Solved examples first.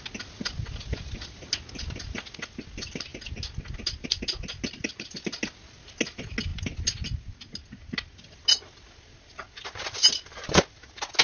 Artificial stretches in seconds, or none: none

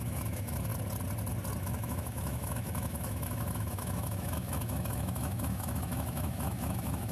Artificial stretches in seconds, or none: 0.0-0.7 (autoencoder, DAC-VAE); 1.6-7.1

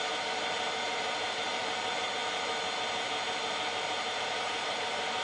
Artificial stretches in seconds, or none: 0.0-2.2 (vocoder, BigVGAN v2); 4.2-5.2

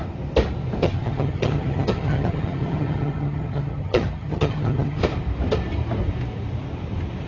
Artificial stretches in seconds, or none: 0.8-5.0 (vocoder, HiFi-GAN)

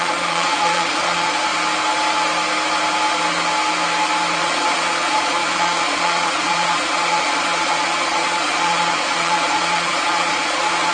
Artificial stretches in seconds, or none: 0.0-1.5 (vocoder, Vocos); 4.4-10.9

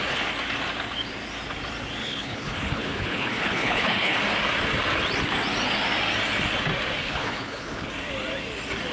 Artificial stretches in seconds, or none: 2.0-4.2 (codec, HILCodec); 7.0-7.9